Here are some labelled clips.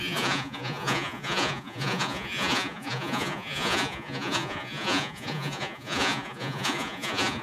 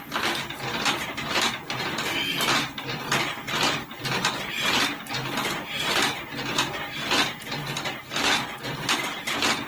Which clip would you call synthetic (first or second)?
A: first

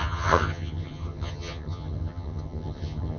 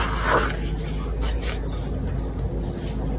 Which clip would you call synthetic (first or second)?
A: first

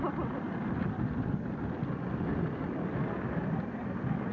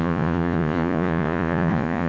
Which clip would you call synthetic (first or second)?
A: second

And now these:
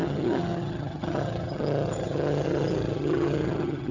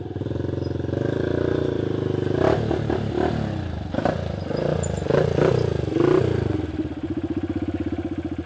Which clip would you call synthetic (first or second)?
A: first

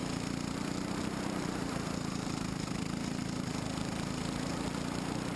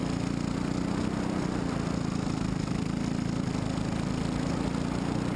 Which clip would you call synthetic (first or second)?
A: first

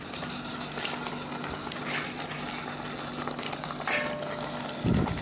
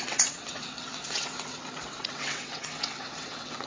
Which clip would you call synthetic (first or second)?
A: second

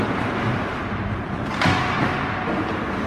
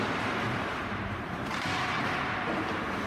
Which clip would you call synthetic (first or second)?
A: second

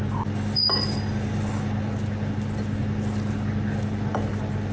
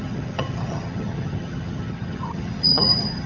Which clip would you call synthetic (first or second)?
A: second